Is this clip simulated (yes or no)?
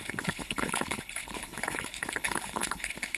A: yes